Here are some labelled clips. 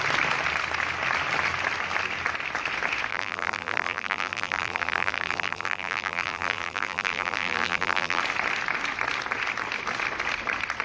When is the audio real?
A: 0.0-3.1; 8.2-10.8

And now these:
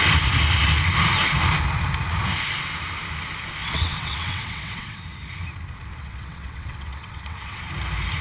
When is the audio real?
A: 0.0-3.6; 5.0-6.0; 7.6-8.2

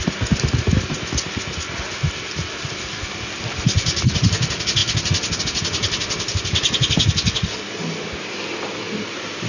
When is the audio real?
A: 0.0-9.5

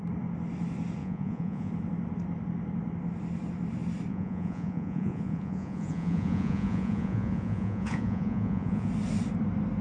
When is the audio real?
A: 0.0-1.0; 1.7-4.1; 8.9-9.8

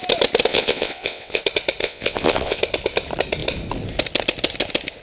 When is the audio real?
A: 0.0-0.5; 1.4-1.8; 2.6-5.0

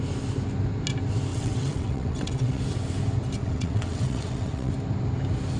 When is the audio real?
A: 0.0-1.3; 2.6-3.4; 4.7-5.6